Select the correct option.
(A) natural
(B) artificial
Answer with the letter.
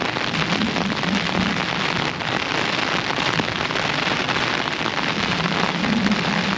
A